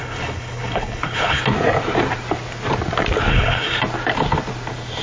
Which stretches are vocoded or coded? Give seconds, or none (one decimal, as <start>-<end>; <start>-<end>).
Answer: 0.0-1.4; 3.3-3.8